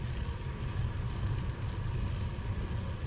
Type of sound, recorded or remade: recorded